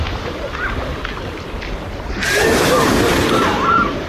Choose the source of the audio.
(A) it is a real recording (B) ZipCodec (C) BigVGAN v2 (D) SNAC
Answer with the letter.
A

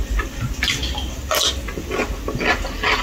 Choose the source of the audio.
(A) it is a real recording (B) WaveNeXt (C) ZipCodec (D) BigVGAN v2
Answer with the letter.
A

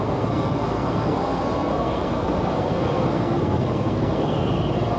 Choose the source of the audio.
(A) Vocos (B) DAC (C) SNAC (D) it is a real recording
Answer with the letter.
C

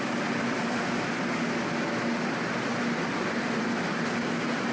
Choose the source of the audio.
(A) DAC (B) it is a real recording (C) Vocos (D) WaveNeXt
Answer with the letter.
B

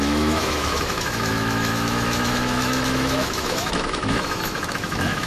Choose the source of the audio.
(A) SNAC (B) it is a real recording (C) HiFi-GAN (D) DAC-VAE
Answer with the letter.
D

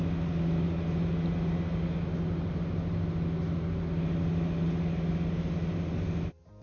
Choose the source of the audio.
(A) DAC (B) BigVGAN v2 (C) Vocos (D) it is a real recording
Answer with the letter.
D